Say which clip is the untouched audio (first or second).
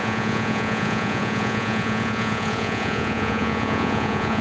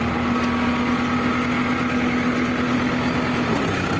second